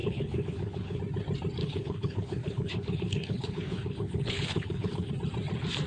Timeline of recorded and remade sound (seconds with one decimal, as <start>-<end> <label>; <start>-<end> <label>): 0.0-1.0 remade; 1.0-1.6 recorded; 1.6-5.1 remade; 5.1-5.9 recorded

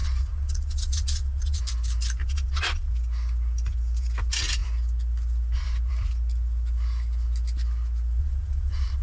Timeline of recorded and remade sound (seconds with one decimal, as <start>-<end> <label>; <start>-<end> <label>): 0.0-1.6 remade; 1.6-2.2 recorded; 2.2-2.9 remade; 2.9-8.2 recorded; 8.2-9.0 remade

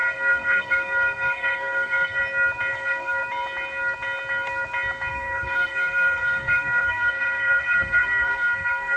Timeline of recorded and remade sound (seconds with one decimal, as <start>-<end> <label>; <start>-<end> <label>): 0.0-2.2 remade; 2.2-2.7 recorded; 2.7-3.2 remade; 3.2-5.1 recorded; 5.1-9.0 remade